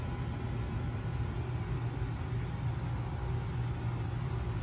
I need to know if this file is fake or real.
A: real